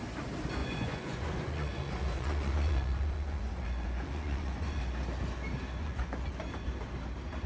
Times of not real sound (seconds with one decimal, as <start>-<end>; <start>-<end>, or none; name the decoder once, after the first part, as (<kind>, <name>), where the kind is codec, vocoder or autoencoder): 0.6-4.8 (vocoder, Vocos); 5.8-6.5